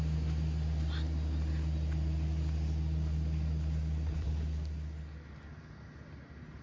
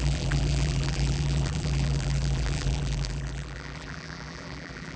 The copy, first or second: second